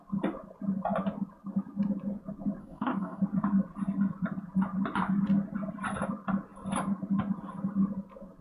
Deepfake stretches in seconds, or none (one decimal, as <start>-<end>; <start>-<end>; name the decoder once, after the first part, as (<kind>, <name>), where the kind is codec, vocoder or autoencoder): 2.6-3.2 (codec, DAC)

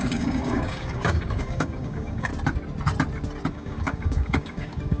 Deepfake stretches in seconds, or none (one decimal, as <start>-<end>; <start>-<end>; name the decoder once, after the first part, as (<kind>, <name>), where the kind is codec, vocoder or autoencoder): 0.0-2.3 (codec, DAC); 3.5-5.0

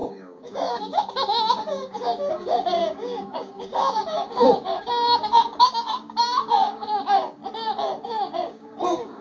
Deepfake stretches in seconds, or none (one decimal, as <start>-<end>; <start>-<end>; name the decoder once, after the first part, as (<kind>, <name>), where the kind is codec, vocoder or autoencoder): 0.0-7.4 (codec, DAC); 8.0-9.2

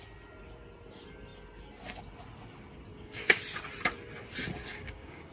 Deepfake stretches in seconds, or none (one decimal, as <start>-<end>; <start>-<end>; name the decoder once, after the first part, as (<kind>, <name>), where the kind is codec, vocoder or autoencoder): 2.9-3.4 (codec, DAC); 4.7-5.3

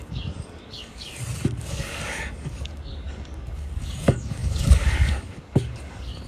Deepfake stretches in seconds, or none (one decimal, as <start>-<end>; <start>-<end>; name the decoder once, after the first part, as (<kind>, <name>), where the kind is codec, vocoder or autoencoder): 0.0-1.1 (codec, DAC); 1.6-6.3

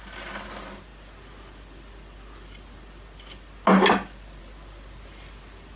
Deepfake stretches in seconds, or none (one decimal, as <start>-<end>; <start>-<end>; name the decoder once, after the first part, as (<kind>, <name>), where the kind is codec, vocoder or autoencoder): none